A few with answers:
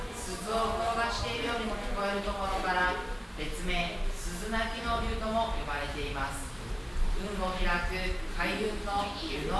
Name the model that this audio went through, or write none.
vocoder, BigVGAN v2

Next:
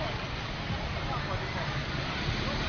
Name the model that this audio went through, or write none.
none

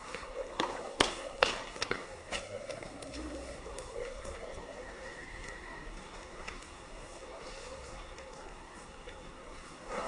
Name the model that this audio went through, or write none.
codec, SNAC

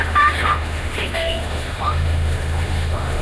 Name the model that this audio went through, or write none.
autoencoder, DAC-VAE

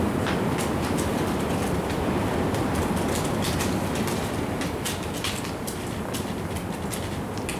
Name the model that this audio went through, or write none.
vocoder, BigVGAN v2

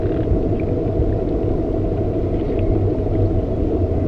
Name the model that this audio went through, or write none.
none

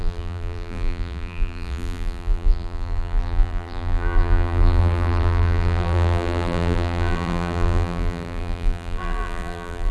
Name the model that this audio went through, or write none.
vocoder, BigVGAN v2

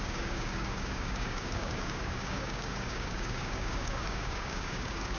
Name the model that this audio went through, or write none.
codec, DAC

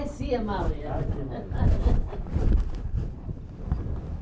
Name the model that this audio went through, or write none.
vocoder, BigVGAN v2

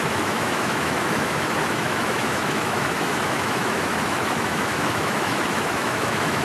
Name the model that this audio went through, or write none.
autoencoder, DAC-VAE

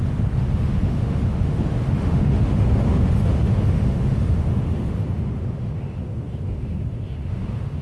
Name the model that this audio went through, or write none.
autoencoder, DAC-VAE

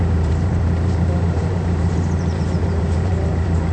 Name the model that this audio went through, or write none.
vocoder, BigVGAN v2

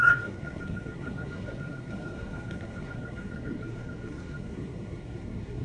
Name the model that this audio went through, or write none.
codec, SNAC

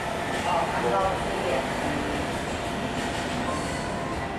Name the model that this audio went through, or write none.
none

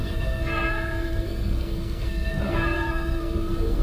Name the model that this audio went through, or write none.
codec, SNAC